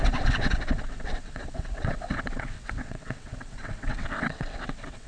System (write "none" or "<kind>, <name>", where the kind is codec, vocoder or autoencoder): vocoder, WaveNeXt